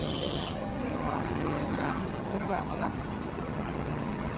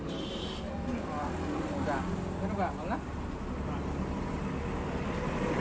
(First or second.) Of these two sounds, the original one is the second